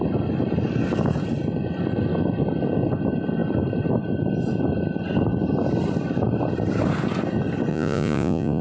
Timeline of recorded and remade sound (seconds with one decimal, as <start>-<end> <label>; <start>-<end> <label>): 0.0-7.7 recorded; 7.7-8.6 remade